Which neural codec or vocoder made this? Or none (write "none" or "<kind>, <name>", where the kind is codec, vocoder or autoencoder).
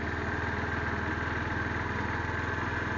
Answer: none